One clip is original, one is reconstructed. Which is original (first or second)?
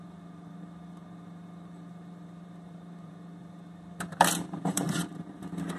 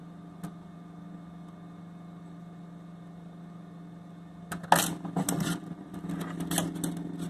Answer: second